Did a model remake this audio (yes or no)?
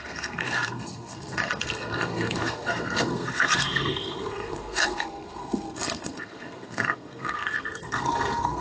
yes